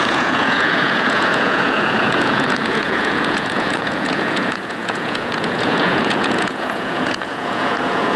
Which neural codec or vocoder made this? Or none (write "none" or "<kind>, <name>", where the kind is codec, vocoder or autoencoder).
vocoder, Vocos